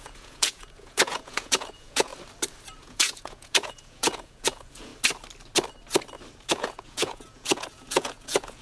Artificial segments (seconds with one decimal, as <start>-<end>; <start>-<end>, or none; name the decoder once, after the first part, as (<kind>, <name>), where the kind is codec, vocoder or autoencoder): 0.0-2.1 (vocoder, Vocos); 2.8-4.9; 6.5-8.6